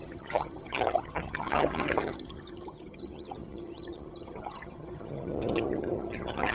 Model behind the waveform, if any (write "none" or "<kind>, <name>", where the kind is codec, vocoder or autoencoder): vocoder, HiFi-GAN